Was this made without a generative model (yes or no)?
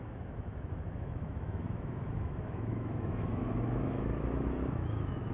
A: no